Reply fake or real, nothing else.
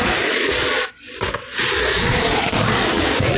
fake